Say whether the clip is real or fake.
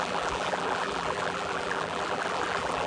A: fake